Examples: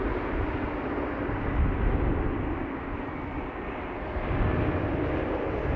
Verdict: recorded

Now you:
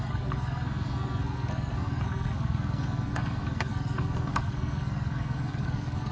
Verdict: remade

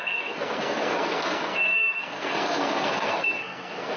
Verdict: remade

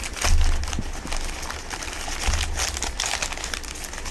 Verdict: recorded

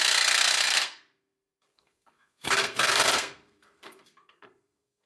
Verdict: remade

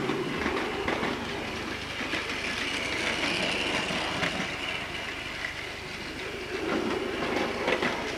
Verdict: recorded